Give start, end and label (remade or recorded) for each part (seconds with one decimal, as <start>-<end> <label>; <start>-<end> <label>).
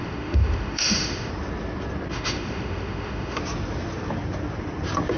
0.0-1.3 remade; 1.3-2.1 recorded; 2.1-3.4 remade; 3.4-5.2 recorded